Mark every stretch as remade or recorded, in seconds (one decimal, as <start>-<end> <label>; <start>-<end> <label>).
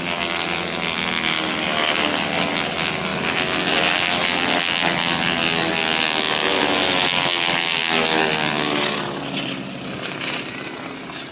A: 0.0-11.3 recorded